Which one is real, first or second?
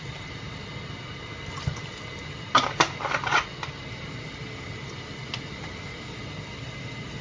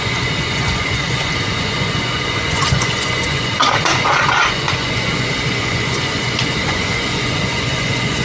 first